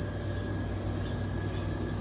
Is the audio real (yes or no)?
yes